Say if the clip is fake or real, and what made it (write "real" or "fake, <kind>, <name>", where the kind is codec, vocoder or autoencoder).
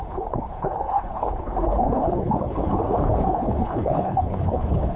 fake, codec, HILCodec